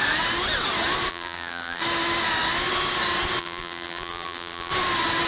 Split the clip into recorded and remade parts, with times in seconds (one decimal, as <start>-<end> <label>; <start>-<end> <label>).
0.0-1.1 recorded; 1.1-1.8 remade; 1.8-3.4 recorded; 3.4-4.7 remade; 4.7-5.3 recorded